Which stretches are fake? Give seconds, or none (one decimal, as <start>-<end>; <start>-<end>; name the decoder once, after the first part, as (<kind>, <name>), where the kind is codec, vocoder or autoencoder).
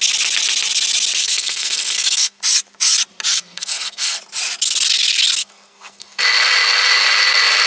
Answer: 1.2-2.4 (codec, SNAC); 3.3-4.2; 5.4-6.2